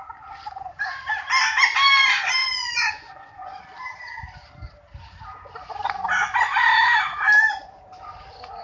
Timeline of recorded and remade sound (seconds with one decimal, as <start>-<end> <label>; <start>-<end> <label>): 0.0-2.4 recorded; 2.4-3.6 remade; 3.6-8.6 recorded